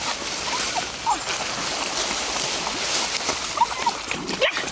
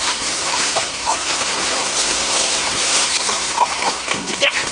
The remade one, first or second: second